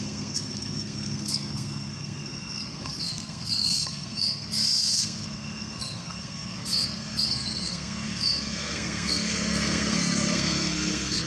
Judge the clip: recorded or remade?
remade